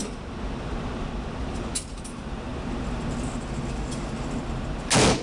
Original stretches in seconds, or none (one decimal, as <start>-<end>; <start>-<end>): 0.0-5.2